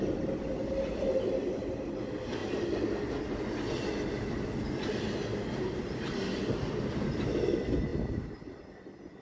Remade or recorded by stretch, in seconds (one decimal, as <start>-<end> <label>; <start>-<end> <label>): 0.0-9.2 recorded